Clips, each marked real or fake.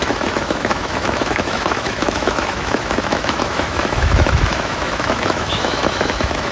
fake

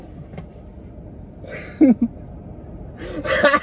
real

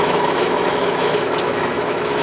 fake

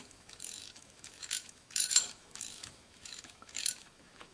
fake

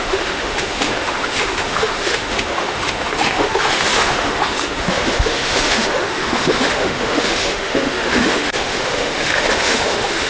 fake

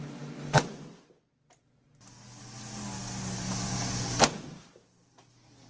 real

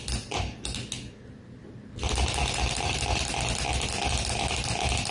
real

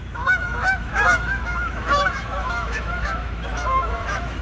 fake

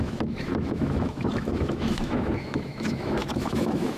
fake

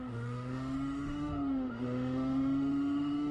fake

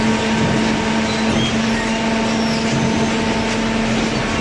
real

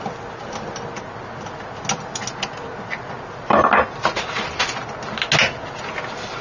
real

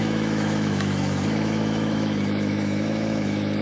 fake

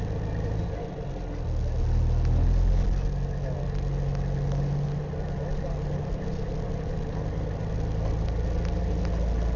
real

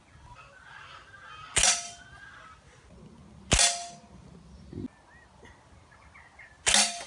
real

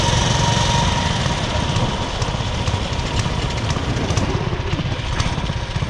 real